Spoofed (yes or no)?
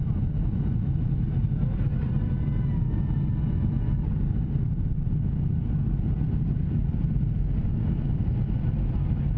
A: no